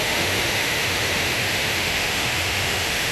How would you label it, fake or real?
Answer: fake